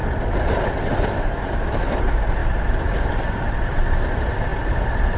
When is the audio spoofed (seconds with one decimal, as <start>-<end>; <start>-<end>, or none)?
2.4-3.9